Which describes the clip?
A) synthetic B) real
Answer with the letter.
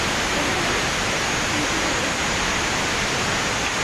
B